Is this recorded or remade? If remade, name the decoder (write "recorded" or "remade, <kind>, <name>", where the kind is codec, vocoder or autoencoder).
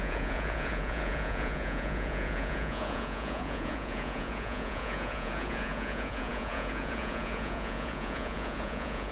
remade, vocoder, Vocos